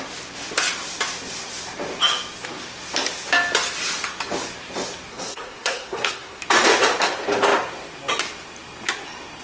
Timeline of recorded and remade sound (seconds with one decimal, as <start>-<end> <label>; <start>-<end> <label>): 0.0-5.1 recorded; 5.1-6.4 remade; 6.4-9.4 recorded